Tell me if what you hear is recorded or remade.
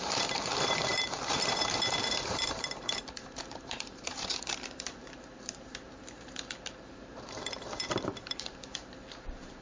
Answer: remade